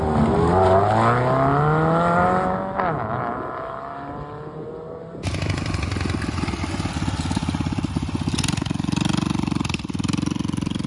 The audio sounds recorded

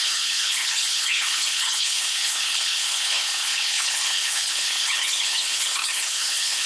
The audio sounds remade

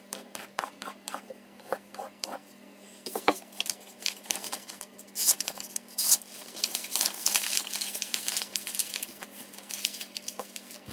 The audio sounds remade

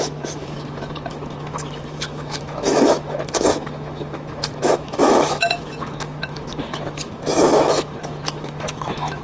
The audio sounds remade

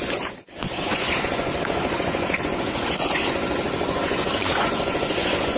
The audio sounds remade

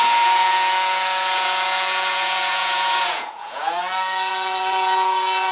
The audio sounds remade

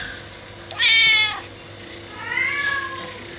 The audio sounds recorded